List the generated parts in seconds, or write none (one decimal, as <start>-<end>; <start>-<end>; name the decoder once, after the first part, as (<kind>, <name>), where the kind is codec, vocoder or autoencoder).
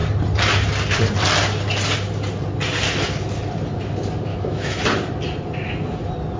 4.3-4.8 (autoencoder, DAC-VAE)